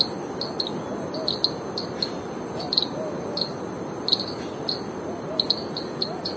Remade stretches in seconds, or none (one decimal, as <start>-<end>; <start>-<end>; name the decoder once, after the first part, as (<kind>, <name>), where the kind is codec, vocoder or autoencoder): none